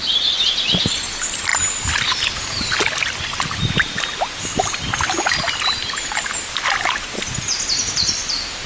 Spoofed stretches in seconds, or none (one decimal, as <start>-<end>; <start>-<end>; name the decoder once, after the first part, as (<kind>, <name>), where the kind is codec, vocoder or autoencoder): none